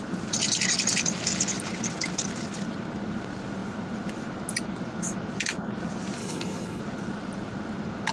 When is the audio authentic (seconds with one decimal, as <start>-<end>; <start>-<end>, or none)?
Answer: 0.0-6.2; 6.8-8.1